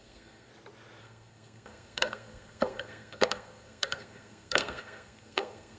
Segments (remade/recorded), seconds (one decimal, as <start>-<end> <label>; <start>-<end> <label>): 0.0-0.5 remade; 0.5-1.0 recorded; 1.0-5.8 remade